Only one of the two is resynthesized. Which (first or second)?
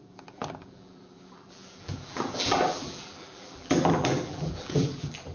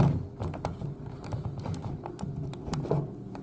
first